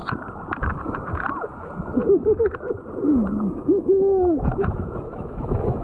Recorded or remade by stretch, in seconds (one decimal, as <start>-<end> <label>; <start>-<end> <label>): 0.0-3.5 recorded; 3.5-5.8 remade